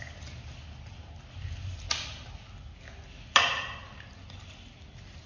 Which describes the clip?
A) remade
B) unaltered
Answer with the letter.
B